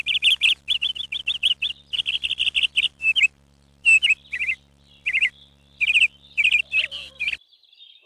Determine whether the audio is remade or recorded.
remade